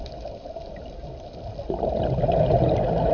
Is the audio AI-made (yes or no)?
no